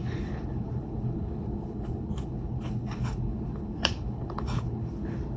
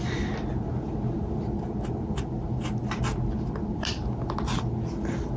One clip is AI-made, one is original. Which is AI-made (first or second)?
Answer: first